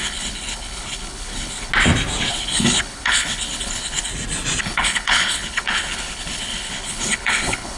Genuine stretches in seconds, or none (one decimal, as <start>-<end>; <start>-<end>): 1.7-2.3; 4.1-4.6